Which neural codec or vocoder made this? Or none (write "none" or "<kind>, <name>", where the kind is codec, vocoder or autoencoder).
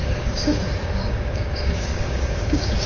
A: codec, DAC